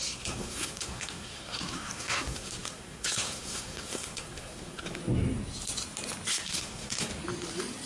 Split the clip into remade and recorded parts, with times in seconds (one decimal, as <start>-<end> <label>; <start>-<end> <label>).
0.0-5.0 remade; 5.0-6.3 recorded; 6.3-7.1 remade; 7.1-7.9 recorded